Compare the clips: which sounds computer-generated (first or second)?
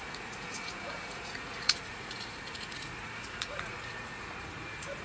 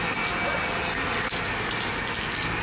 first